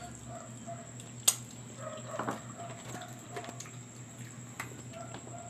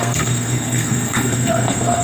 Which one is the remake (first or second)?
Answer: second